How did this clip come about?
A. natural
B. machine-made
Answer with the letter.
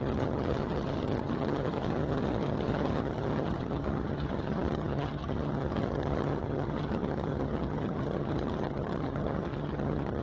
B